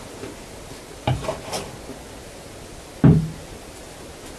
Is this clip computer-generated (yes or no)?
no